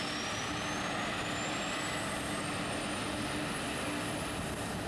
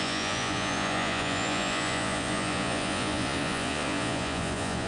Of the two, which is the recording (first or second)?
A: first